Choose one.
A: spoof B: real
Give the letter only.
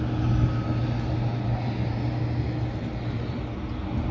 B